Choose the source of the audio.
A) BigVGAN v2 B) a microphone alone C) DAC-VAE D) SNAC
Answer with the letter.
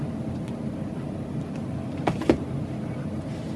B